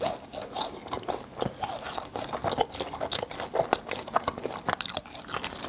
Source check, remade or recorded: recorded